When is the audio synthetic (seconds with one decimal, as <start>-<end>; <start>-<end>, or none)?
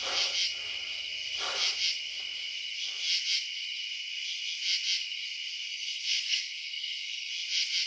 5.7-7.3